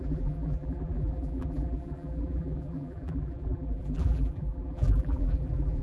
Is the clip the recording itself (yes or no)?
no